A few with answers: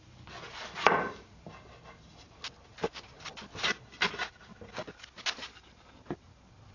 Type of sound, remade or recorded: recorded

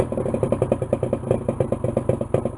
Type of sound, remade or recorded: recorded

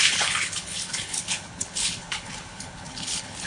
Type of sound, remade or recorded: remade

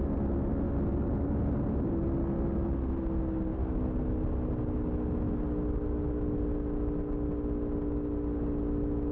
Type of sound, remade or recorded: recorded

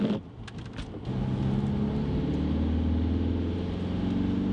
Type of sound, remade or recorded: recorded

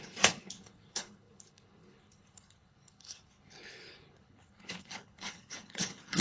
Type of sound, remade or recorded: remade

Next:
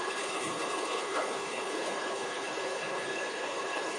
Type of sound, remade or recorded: remade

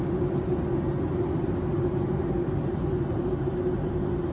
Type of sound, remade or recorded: recorded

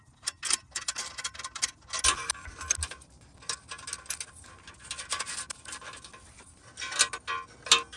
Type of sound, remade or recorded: recorded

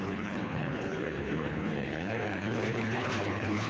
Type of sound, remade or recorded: remade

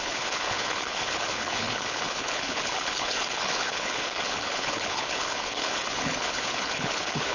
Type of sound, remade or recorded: remade